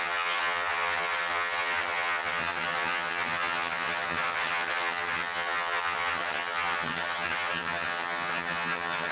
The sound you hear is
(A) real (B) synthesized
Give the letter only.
B